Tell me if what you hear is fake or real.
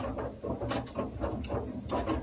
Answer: real